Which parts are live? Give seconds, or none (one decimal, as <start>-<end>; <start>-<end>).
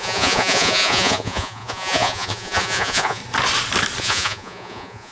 3.2-4.0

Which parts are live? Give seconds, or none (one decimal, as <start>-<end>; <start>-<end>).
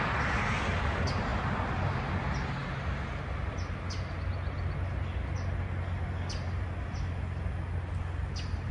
0.0-8.7